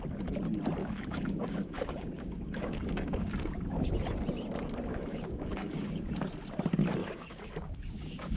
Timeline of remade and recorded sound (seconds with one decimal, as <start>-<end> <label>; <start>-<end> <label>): 0.0-0.8 recorded; 0.8-3.9 remade; 3.9-4.9 recorded; 4.9-6.1 remade; 6.1-7.0 recorded; 7.0-8.4 remade